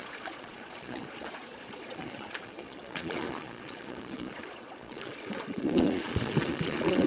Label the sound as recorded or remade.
remade